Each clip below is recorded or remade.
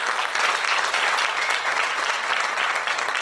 recorded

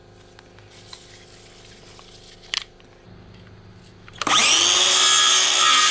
recorded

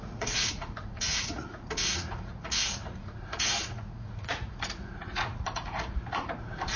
remade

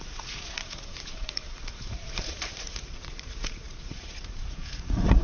remade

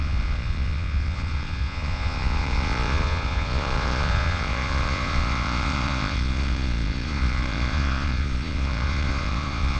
remade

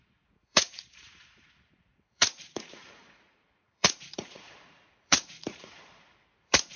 remade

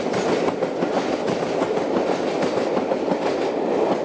recorded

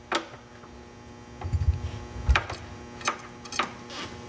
recorded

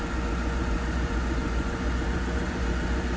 remade